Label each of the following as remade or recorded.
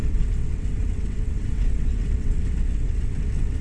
remade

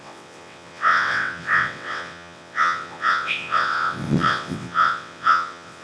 remade